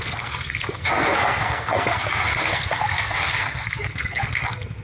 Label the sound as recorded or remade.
remade